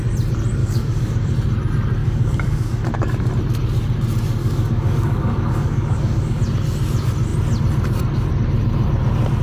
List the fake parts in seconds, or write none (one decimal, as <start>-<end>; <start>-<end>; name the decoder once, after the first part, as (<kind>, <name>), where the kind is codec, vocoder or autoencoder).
0.6-1.3 (codec, DAC); 2.0-3.3; 4.4-6.4